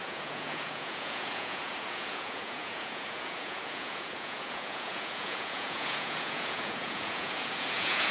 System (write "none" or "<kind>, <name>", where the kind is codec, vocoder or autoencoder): vocoder, Vocos